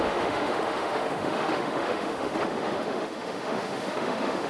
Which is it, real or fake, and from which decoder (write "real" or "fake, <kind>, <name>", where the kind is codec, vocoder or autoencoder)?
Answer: fake, autoencoder, DAC-VAE